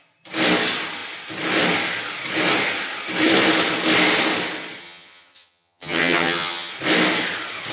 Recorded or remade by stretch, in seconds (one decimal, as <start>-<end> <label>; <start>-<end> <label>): 0.0-4.8 recorded; 4.8-6.7 remade; 6.7-7.7 recorded